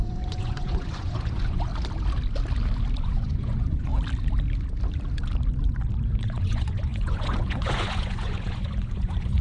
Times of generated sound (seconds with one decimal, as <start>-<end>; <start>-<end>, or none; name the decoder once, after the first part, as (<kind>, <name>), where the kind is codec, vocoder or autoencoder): 0.0-1.7 (vocoder, Vocos); 3.0-3.9; 6.2-9.4